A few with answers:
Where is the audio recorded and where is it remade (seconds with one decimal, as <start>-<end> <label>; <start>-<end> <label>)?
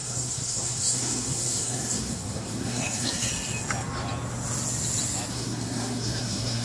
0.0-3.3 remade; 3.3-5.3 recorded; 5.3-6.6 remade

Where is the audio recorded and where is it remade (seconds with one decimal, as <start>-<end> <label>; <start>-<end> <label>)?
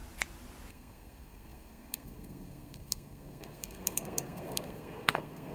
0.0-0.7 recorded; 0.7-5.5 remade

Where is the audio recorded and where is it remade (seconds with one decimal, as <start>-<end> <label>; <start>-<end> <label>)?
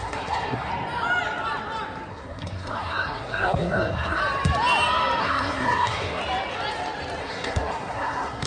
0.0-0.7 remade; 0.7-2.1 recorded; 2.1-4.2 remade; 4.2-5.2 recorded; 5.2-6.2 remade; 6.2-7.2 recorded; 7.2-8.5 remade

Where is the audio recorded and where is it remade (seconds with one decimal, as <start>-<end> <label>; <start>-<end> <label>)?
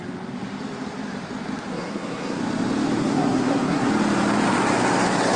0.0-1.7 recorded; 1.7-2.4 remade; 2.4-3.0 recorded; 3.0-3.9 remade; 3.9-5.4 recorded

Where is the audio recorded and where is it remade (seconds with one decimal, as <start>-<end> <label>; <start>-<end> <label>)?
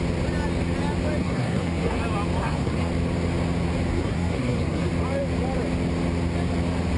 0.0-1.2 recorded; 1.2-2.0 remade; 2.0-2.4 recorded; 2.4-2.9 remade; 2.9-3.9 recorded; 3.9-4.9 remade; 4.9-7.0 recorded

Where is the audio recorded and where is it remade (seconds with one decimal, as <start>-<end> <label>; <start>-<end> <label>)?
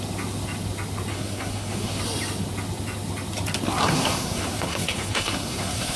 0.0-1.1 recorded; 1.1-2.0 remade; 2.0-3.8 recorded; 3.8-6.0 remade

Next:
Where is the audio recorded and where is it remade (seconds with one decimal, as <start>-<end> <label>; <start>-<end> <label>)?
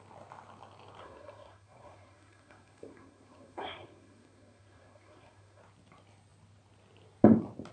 0.0-1.0 recorded; 1.0-5.6 remade; 5.6-7.7 recorded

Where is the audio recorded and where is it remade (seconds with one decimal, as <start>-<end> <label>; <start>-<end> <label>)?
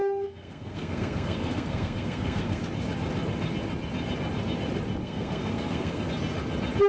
0.0-2.6 remade; 2.6-5.0 recorded; 5.0-6.1 remade; 6.1-6.9 recorded